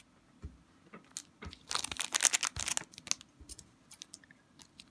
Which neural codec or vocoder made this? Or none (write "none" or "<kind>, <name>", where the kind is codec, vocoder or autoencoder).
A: none